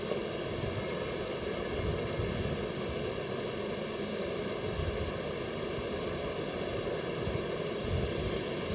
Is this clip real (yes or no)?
yes